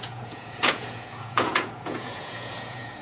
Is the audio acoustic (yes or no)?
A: no